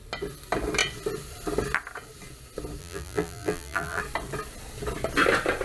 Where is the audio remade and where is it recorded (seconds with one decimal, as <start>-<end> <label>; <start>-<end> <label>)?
0.0-2.8 recorded; 2.8-4.0 remade; 4.0-5.6 recorded